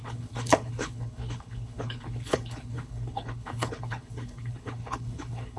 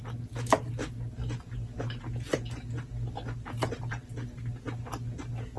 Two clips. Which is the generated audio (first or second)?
first